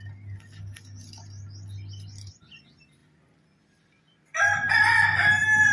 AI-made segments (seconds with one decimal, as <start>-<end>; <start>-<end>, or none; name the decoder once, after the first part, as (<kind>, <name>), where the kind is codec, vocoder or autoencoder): 3.0-5.7 (vocoder, BigVGAN v2)